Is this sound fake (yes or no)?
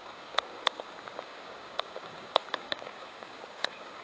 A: yes